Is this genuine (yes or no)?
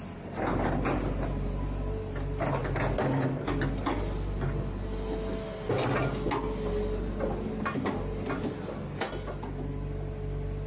yes